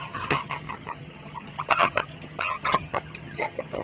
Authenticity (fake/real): fake